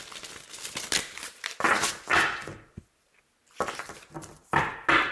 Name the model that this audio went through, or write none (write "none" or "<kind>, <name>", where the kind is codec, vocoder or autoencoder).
none